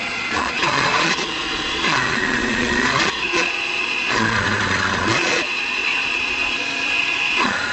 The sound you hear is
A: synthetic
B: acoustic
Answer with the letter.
A